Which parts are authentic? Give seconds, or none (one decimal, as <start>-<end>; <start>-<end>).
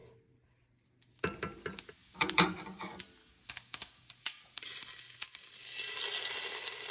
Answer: 0.0-3.2; 4.4-6.9